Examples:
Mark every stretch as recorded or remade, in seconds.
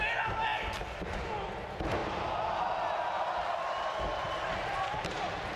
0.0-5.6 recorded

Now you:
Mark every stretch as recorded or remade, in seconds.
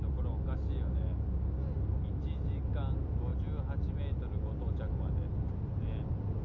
0.0-6.4 recorded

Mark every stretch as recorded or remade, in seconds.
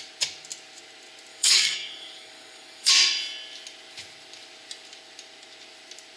0.0-1.3 recorded; 1.3-2.9 remade; 2.9-6.2 recorded